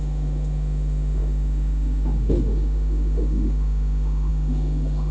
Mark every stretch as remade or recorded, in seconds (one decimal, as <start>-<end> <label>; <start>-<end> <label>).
0.0-5.1 remade